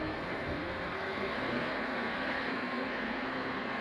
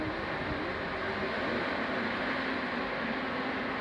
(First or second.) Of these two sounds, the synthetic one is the first